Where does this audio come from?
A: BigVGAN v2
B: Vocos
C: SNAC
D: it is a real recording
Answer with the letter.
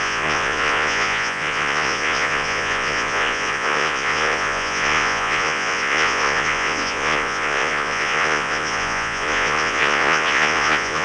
B